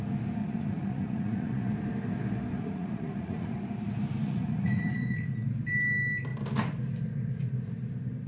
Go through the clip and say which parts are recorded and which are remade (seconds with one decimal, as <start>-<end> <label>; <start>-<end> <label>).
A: 0.0-0.4 recorded; 0.4-1.7 remade; 1.7-2.5 recorded; 2.5-3.6 remade; 3.6-4.2 recorded; 4.2-5.3 remade; 5.3-8.3 recorded